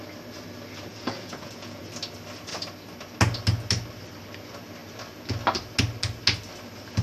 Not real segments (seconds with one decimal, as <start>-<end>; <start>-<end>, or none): 0.9-1.8

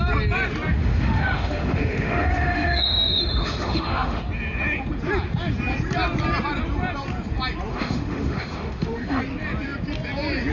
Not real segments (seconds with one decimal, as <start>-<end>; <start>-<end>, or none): 0.8-4.2; 7.7-9.2

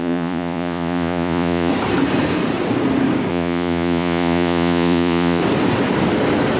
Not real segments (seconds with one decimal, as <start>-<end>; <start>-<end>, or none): 0.0-1.7; 3.3-5.4